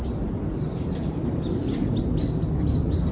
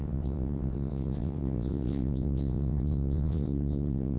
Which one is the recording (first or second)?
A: first